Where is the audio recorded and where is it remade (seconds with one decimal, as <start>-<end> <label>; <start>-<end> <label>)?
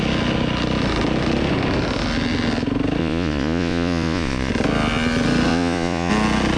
0.0-3.0 recorded; 3.0-4.5 remade; 4.5-5.5 recorded; 5.5-6.1 remade; 6.1-6.6 recorded